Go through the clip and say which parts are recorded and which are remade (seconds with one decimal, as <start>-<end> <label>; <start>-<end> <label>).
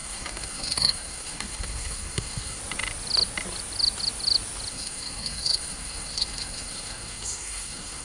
0.0-2.6 remade; 2.6-4.7 recorded; 4.7-8.0 remade